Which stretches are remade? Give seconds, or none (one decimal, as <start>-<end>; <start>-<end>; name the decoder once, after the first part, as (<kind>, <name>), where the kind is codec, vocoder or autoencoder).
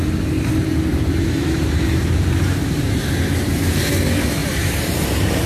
0.9-3.9 (vocoder, BigVGAN v2); 4.4-5.5